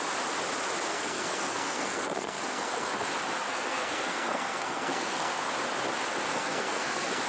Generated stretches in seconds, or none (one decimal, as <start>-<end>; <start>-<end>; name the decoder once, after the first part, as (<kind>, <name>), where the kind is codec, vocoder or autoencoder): 0.9-3.1 (codec, SNAC); 3.5-5.5; 6.3-7.3